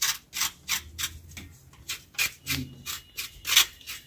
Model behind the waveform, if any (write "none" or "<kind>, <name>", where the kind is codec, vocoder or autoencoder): none